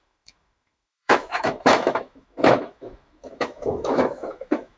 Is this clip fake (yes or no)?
yes